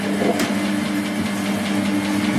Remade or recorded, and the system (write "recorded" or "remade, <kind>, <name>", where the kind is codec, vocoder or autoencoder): recorded